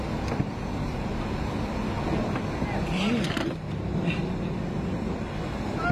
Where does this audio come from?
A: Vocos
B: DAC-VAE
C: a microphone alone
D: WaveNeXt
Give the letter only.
C